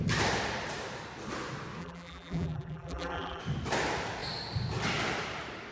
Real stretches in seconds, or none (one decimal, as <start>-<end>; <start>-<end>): 0.0-1.8; 3.4-5.7